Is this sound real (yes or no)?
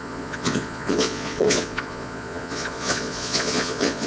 no